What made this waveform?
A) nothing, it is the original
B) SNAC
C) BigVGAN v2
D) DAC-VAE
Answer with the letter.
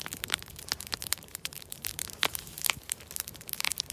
C